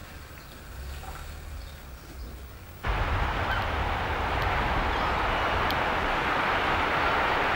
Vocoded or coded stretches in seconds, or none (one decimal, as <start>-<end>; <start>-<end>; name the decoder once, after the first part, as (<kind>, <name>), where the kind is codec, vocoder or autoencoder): none